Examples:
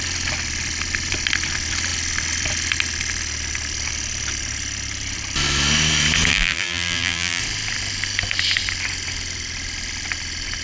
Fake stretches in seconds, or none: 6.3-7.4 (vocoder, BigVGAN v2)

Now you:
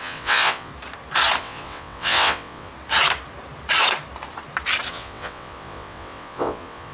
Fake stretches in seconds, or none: 0.0-0.7 (vocoder, WaveNeXt); 1.4-2.7; 4.9-6.9

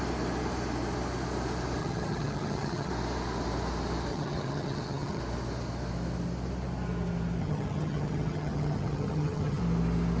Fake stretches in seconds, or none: 1.8-2.9 (vocoder, HiFi-GAN); 4.1-5.2; 7.4-9.6

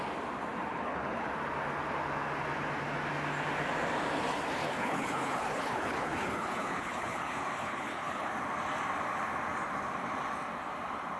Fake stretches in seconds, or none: 0.6-1.3 (codec, HILCodec); 4.6-8.3

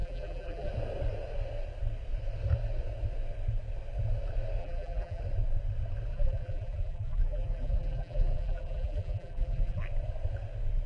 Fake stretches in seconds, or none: 0.0-0.7 (vocoder, BigVGAN v2); 4.6-5.2; 6.1-9.8

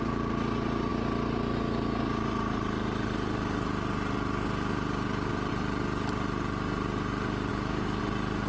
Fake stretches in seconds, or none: 7.5-8.0 (autoencoder, DAC-VAE)

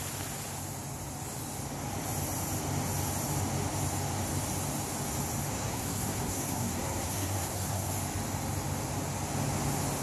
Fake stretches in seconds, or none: 5.5-7.9 (codec, SNAC)